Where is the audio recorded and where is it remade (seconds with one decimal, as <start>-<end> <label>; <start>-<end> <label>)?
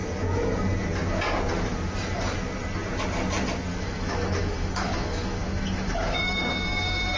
0.0-3.7 recorded; 3.7-6.5 remade; 6.5-7.2 recorded